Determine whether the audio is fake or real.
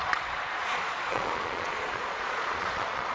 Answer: fake